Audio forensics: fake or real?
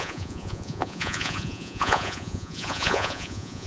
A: fake